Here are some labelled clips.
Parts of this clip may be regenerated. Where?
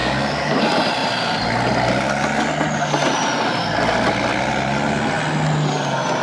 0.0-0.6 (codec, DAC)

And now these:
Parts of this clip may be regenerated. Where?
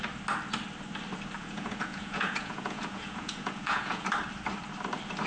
1.4-4.1 (vocoder, Vocos)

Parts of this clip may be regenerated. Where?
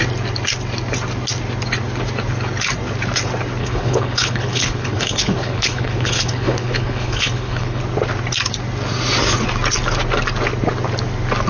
3.6-7.8 (codec, HILCodec)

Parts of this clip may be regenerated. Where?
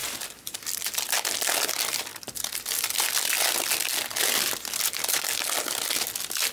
0.0-1.1 (vocoder, BigVGAN v2); 2.1-2.6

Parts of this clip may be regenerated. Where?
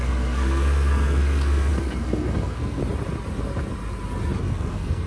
0.0-2.8 (codec, SNAC); 4.4-5.1